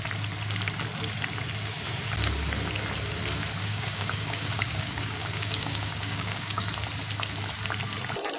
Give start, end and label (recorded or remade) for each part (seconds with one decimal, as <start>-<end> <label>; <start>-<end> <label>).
0.0-3.6 recorded; 3.6-6.7 remade; 6.7-8.4 recorded